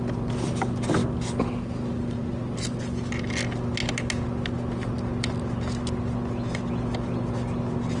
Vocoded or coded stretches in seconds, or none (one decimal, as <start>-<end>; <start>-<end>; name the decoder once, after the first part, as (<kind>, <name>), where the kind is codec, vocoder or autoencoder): none